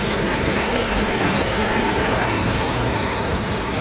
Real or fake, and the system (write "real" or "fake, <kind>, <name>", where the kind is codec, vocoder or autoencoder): fake, codec, SNAC